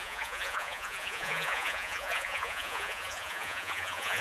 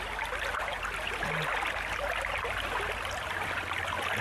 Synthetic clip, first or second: first